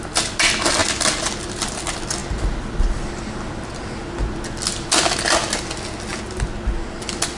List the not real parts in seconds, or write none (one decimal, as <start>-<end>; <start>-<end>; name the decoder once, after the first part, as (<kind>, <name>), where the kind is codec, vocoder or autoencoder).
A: none